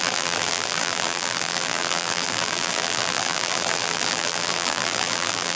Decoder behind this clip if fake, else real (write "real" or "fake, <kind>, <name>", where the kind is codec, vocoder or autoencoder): fake, vocoder, BigVGAN v2